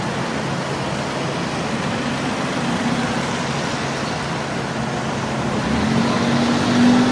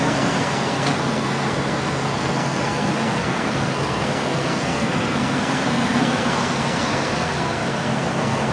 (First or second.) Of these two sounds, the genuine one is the first